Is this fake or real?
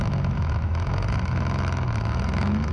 fake